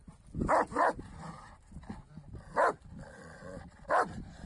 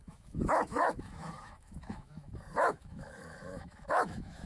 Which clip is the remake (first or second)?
second